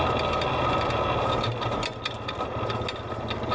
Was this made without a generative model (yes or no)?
yes